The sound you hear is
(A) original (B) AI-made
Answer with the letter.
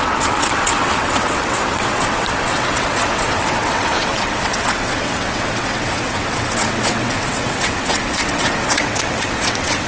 B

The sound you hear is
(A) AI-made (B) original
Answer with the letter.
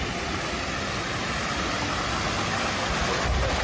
B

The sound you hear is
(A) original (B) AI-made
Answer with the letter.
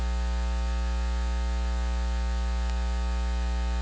A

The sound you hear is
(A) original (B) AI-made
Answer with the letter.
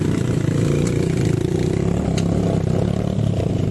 A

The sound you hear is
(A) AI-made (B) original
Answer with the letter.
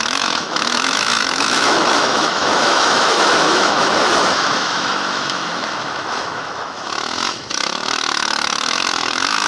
A